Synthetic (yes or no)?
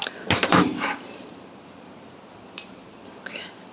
no